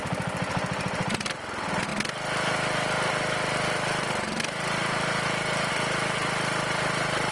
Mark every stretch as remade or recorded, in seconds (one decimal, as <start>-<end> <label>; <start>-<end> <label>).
0.0-7.3 recorded